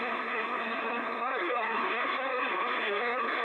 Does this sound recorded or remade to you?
remade